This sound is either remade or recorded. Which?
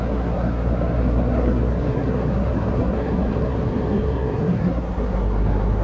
remade